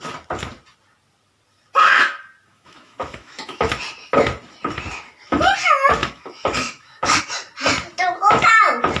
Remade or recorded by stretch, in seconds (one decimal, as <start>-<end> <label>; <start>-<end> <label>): 0.0-2.5 recorded; 2.5-3.7 remade; 3.7-6.0 recorded; 6.0-7.2 remade; 7.2-9.0 recorded